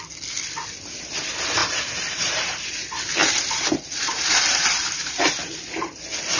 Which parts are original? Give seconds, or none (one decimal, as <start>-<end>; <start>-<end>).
0.0-1.6; 2.8-3.2; 5.9-6.4